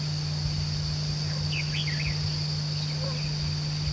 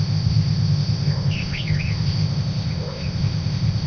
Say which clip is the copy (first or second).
second